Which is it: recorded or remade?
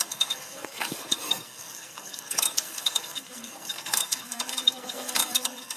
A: remade